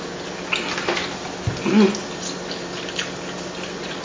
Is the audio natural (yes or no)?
yes